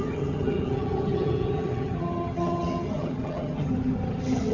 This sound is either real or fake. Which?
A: fake